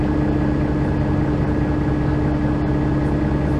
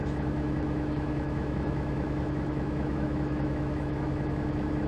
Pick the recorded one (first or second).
first